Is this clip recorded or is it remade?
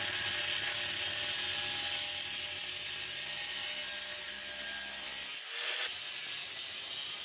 recorded